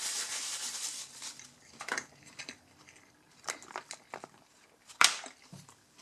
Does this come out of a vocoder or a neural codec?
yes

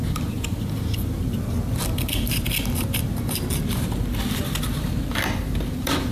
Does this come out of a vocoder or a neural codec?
yes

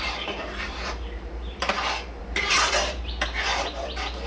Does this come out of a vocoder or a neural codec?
yes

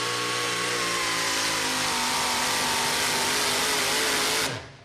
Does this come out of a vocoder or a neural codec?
no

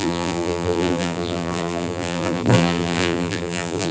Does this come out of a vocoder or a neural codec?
yes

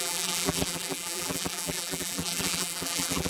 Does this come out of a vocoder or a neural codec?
yes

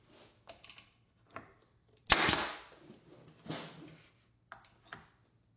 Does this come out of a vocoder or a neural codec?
no